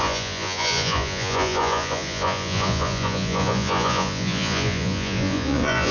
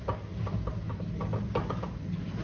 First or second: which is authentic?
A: second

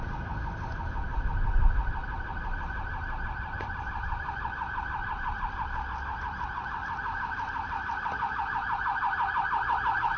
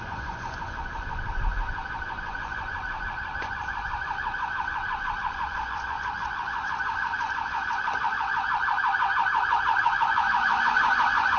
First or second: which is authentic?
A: first